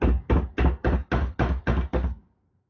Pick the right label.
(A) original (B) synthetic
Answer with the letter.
A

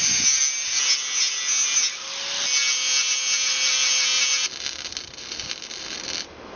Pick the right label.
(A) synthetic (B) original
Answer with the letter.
B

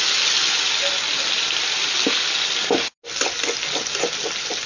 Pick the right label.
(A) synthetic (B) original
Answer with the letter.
B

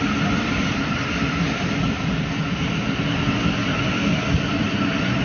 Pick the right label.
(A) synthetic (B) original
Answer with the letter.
B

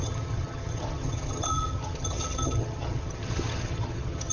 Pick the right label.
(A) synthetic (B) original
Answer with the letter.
A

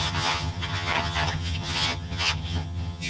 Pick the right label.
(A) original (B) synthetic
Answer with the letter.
B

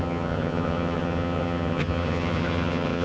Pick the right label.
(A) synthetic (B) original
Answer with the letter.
A